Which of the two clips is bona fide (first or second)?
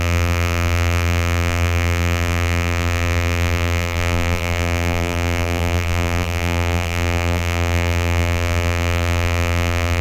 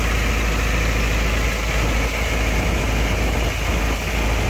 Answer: second